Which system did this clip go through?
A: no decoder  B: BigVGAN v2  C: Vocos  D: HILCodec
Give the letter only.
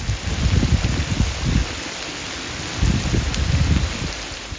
A